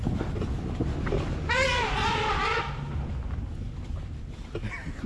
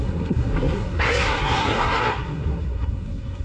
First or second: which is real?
first